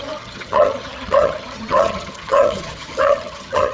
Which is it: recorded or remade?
remade